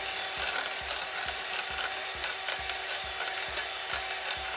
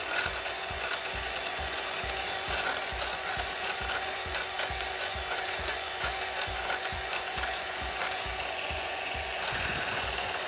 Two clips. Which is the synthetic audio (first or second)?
second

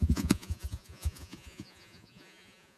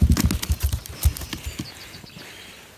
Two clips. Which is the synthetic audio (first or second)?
first